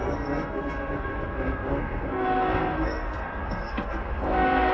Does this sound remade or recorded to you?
remade